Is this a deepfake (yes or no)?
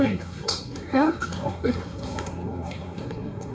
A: yes